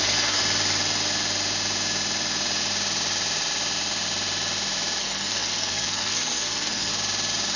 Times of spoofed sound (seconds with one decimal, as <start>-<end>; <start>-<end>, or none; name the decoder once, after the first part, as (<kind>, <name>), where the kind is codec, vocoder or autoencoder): 0.0-0.4 (codec, SNAC); 5.0-6.9